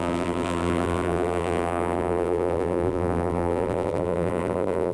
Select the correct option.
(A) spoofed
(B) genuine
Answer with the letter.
A